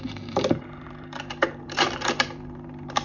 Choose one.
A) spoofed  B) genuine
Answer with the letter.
A